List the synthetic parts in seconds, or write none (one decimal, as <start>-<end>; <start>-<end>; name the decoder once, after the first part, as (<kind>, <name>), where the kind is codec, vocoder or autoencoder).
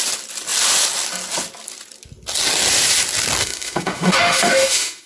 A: 3.4-5.1 (autoencoder, DAC-VAE)